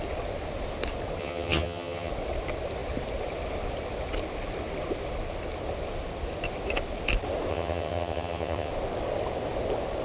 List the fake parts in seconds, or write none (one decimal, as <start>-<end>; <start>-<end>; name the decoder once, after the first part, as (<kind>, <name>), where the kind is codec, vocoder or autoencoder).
1.2-2.1 (vocoder, HiFi-GAN); 7.5-8.7